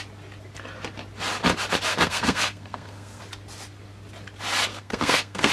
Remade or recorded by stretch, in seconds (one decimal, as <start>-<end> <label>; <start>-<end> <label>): 0.0-1.9 recorded; 1.9-3.2 remade; 3.2-4.7 recorded; 4.7-5.5 remade

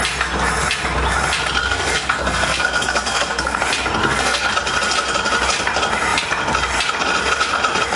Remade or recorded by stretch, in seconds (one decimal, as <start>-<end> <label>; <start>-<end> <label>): 0.0-1.6 recorded; 1.6-3.6 remade; 3.6-4.0 recorded; 4.0-4.5 remade; 4.5-8.0 recorded

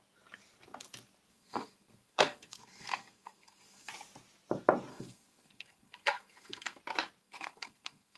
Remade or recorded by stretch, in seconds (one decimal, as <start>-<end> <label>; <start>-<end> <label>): 0.0-1.3 recorded; 1.3-3.9 remade; 3.9-4.9 recorded; 4.9-6.8 remade; 6.8-7.2 recorded; 7.2-8.2 remade